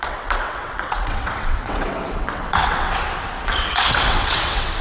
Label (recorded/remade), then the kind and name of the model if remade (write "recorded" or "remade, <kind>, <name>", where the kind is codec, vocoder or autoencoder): remade, vocoder, WaveNeXt